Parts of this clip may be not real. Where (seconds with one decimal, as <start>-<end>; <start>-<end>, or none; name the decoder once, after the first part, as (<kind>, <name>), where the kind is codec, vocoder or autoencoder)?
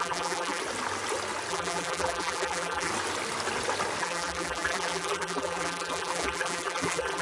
0.0-0.6 (vocoder, BigVGAN v2); 1.5-2.9; 4.0-7.2